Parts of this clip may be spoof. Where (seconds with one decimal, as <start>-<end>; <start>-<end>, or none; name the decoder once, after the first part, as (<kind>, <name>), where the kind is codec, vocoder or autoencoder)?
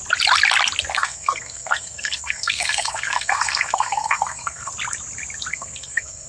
0.9-4.7 (codec, SNAC); 5.5-6.3